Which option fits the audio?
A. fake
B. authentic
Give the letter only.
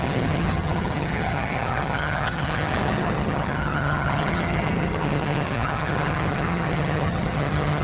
A